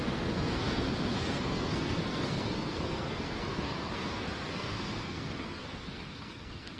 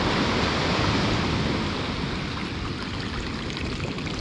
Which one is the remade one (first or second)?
first